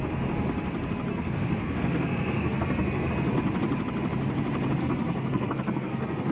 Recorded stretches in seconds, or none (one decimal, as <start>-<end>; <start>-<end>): 0.0-1.1; 3.1-4.8